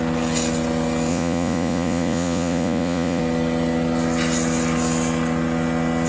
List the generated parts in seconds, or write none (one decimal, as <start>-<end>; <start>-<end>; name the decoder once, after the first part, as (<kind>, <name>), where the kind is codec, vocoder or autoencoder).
1.1-3.2 (vocoder, Vocos)